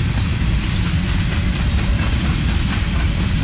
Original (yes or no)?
yes